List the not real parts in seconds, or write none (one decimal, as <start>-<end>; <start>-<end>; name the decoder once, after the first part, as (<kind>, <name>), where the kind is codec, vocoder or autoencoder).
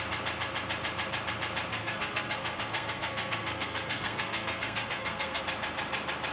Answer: 1.7-5.4 (codec, SNAC)